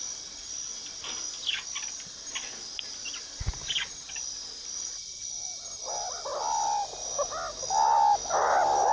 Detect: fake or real real